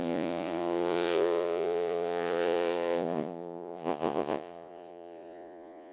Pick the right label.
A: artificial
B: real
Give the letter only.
A